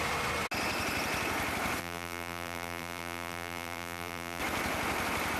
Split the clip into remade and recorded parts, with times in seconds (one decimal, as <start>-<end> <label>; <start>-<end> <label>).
0.0-1.8 recorded; 1.8-4.4 remade; 4.4-5.4 recorded